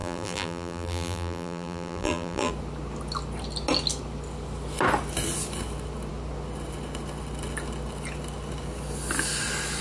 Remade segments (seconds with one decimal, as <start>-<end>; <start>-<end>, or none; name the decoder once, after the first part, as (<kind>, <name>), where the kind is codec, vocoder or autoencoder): 0.0-2.5 (vocoder, BigVGAN v2)